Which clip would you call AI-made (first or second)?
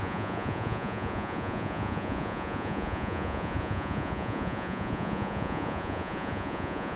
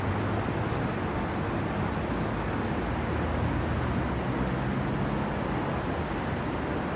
first